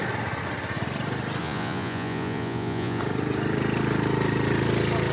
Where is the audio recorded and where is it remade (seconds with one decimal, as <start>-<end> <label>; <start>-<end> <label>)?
0.0-1.4 recorded; 1.4-3.0 remade; 3.0-5.1 recorded